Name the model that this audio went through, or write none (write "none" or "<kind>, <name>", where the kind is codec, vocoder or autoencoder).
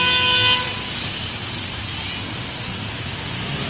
none